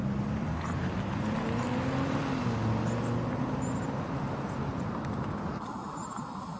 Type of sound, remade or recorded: recorded